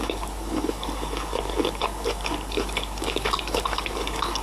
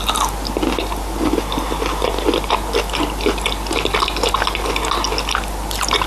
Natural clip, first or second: second